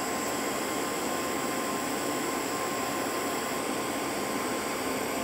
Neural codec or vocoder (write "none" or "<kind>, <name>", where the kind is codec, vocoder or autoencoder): vocoder, BigVGAN v2